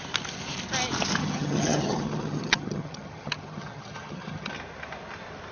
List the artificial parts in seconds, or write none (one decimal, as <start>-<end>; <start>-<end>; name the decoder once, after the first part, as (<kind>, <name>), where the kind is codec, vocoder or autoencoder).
1.2-4.5 (vocoder, HiFi-GAN)